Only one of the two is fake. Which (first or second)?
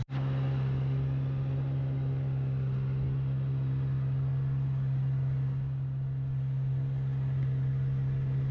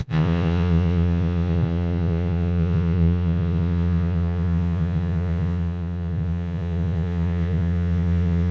second